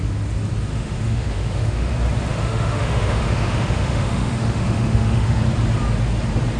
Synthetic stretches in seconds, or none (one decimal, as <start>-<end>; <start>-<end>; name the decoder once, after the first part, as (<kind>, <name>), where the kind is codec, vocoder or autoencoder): 0.7-1.9 (autoencoder, DAC-VAE); 2.3-5.4